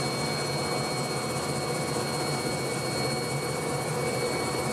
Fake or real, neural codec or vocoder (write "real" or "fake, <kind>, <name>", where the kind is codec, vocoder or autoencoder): real